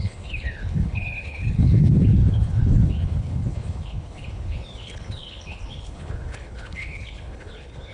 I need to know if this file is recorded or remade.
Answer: remade